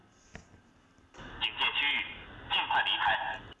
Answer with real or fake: real